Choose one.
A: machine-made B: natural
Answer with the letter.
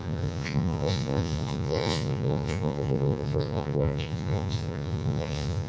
A